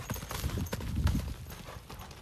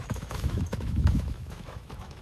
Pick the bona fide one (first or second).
first